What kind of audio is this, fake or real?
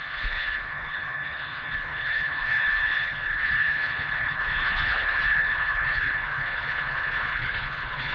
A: fake